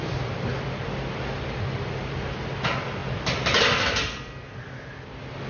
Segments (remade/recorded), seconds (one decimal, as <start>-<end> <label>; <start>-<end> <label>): 0.0-5.5 recorded